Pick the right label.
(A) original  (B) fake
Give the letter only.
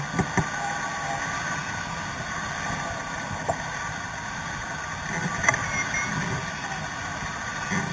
A